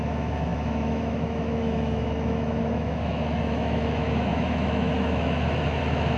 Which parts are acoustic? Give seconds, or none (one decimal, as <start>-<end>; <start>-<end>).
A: none